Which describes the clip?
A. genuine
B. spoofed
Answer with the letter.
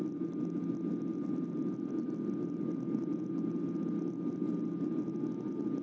A